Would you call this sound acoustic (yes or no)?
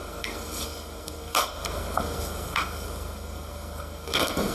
no